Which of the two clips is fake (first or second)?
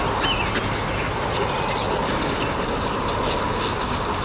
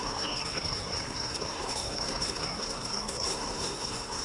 second